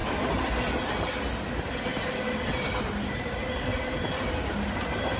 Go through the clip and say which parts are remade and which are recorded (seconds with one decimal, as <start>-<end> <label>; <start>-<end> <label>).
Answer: 0.0-1.9 recorded; 1.9-2.8 remade; 2.8-3.7 recorded; 3.7-4.3 remade; 4.3-5.2 recorded